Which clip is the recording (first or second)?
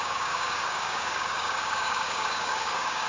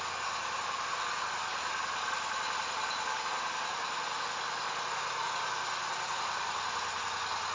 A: second